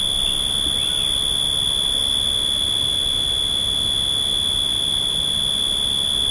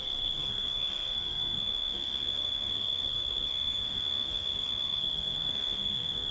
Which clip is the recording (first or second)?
first